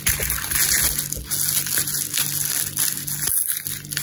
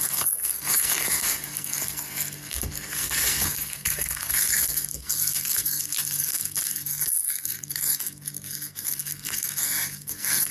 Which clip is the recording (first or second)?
first